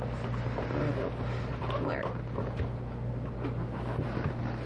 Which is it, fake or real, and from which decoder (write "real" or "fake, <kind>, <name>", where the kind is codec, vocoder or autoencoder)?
real